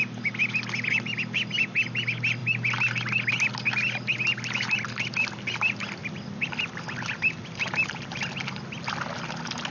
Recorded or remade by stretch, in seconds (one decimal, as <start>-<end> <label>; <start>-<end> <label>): 0.0-9.7 recorded